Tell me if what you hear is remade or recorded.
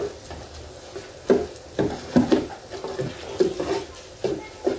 recorded